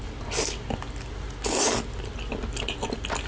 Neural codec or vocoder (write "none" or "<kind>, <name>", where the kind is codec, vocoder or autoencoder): none